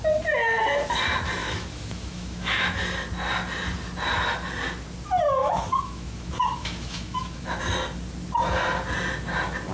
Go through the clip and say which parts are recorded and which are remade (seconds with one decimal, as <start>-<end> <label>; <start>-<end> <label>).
0.0-1.4 recorded; 1.4-2.8 remade; 2.8-5.4 recorded; 5.4-7.6 remade; 7.6-9.7 recorded